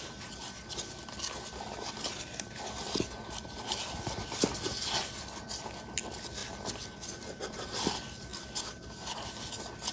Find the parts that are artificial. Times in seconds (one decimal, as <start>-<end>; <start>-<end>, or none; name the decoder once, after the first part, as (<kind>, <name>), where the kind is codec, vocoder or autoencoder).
none

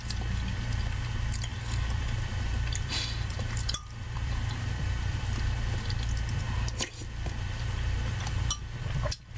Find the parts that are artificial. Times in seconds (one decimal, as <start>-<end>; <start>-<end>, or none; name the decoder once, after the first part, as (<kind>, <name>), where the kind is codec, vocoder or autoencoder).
1.5-5.2 (vocoder, BigVGAN v2)